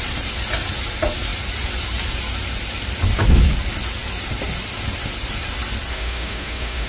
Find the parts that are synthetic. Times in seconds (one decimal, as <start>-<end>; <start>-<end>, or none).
5.9-6.9